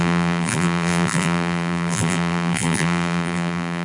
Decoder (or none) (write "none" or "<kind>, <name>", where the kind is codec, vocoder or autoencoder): vocoder, BigVGAN v2